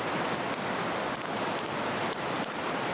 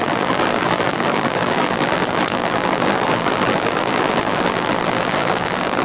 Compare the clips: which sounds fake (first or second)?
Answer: second